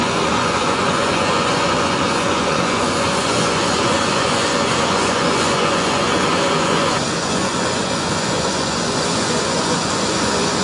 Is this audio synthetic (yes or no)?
yes